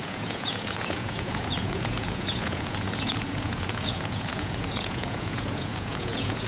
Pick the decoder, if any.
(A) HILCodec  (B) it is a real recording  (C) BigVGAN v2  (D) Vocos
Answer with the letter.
D